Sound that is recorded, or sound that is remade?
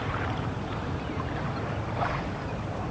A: remade